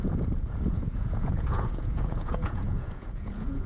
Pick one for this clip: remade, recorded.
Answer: remade